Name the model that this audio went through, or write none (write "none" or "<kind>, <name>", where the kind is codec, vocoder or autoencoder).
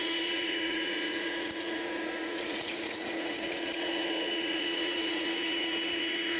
vocoder, Vocos